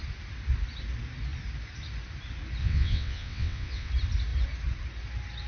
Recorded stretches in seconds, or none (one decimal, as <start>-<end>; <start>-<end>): 0.0-2.6; 3.9-5.5